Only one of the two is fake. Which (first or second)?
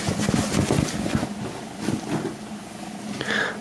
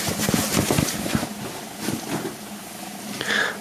second